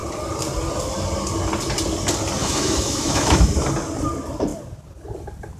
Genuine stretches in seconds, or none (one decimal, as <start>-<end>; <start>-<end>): 0.0-2.4; 3.5-5.6